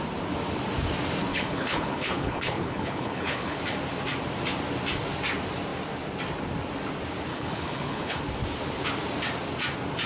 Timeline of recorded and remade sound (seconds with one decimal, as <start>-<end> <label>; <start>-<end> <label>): 0.0-1.3 recorded; 1.3-3.6 remade; 3.6-7.3 recorded; 7.3-8.2 remade; 8.2-10.1 recorded